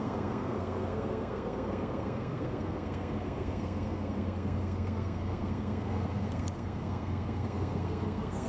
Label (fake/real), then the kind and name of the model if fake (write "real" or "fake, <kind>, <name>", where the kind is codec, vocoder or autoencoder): fake, codec, SNAC